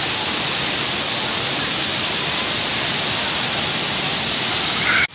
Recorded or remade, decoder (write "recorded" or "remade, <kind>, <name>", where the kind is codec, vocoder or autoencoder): recorded